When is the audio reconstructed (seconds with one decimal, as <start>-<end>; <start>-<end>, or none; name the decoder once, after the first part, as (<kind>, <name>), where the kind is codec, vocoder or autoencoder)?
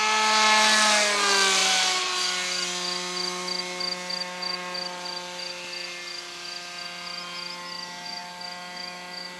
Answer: none